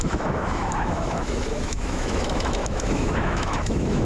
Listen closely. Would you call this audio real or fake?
fake